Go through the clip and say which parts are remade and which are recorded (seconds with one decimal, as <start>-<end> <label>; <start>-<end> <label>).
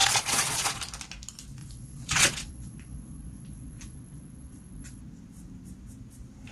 0.0-0.8 remade; 0.8-1.6 recorded; 1.6-5.0 remade; 5.0-6.5 recorded